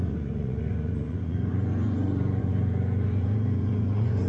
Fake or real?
fake